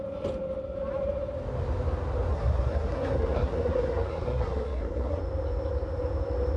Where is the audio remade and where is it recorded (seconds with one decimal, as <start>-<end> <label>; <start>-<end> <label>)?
0.0-2.3 recorded; 2.3-5.2 remade; 5.2-6.6 recorded